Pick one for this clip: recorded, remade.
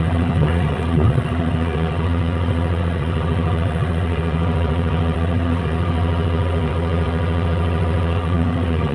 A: remade